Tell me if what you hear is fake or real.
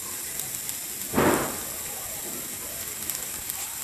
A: real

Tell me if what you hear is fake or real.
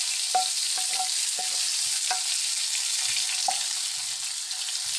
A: real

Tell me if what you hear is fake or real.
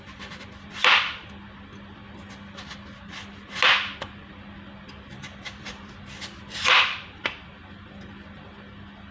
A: real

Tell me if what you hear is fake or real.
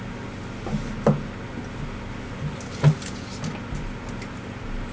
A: real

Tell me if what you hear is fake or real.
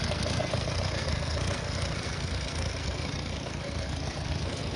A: fake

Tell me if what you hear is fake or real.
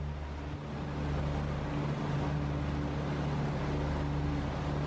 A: real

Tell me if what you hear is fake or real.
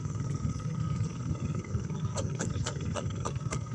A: fake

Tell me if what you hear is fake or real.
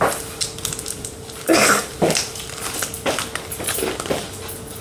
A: real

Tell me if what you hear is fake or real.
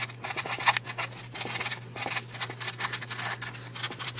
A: real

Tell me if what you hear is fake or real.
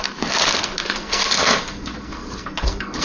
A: fake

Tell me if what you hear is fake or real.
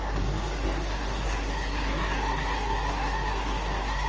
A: fake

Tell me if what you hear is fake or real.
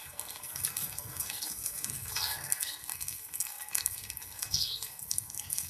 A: fake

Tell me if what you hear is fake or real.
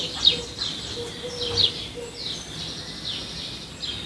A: real